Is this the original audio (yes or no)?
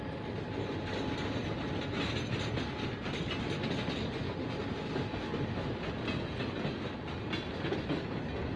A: yes